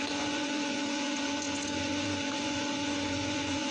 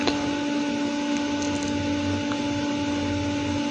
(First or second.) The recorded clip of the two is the second